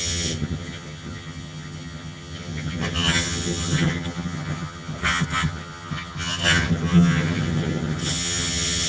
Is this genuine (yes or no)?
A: no